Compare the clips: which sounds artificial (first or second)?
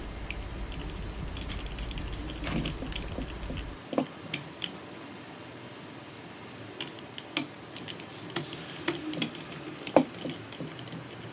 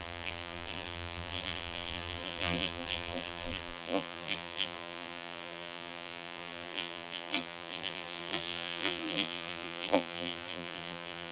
second